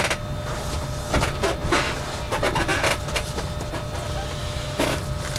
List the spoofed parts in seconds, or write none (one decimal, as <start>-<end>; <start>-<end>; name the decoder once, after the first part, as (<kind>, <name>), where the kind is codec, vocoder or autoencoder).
4.4-5.0 (autoencoder, DAC-VAE)